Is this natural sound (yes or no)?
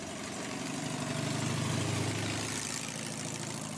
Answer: yes